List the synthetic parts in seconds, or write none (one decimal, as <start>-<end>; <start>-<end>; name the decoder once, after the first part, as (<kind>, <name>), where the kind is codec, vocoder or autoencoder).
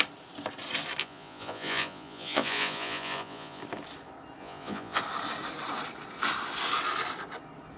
1.0-3.6 (vocoder, Vocos); 4.4-5.0